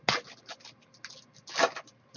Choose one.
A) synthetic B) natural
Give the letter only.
B